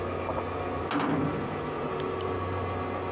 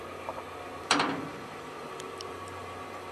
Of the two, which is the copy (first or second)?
second